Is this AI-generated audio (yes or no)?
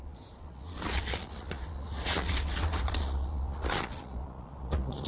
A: yes